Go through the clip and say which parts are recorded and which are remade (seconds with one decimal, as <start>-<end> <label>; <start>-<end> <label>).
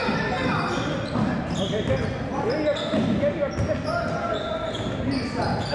0.0-5.7 recorded